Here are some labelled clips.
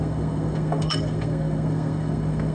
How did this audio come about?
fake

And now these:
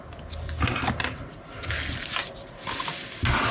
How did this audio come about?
real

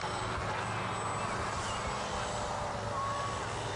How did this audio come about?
real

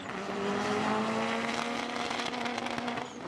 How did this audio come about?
real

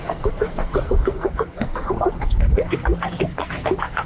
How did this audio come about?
fake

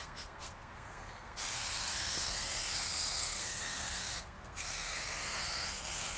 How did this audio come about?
fake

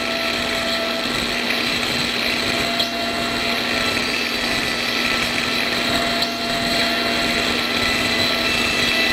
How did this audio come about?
real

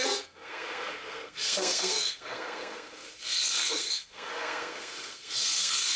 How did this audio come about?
fake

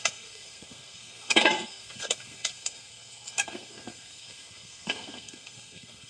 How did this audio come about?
fake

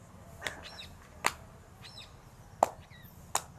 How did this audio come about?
real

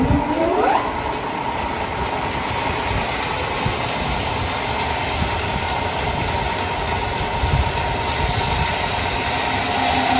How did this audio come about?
real